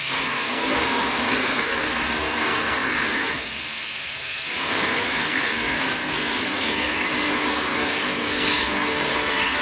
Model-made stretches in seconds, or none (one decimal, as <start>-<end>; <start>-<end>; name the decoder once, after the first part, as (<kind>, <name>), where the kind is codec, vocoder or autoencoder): 0.0-9.6 (codec, SNAC)